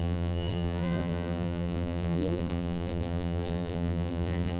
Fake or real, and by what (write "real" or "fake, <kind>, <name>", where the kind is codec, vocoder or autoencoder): fake, vocoder, BigVGAN v2